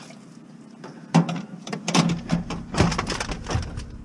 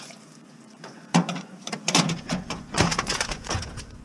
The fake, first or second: second